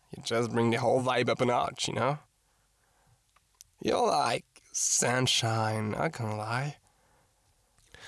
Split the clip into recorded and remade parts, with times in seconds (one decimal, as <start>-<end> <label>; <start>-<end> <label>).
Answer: 0.0-8.1 recorded